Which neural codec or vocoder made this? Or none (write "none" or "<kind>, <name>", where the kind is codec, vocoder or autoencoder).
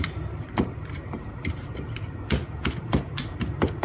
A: vocoder, BigVGAN v2